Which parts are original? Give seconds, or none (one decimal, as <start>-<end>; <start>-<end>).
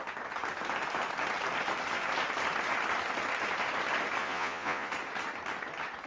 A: 0.0-4.2; 4.9-6.1